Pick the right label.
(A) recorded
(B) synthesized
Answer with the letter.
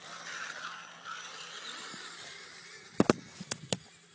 A